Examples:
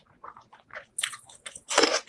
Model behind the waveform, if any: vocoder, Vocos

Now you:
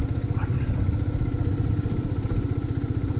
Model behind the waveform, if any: none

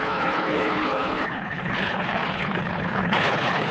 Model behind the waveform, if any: codec, HILCodec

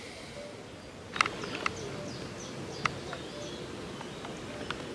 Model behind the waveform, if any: none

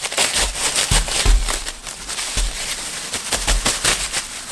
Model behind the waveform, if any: none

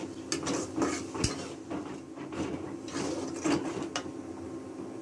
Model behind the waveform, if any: none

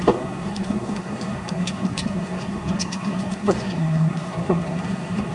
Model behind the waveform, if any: codec, SNAC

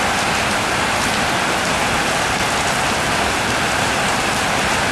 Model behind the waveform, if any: vocoder, BigVGAN v2